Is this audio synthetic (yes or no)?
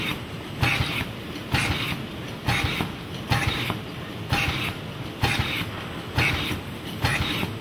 no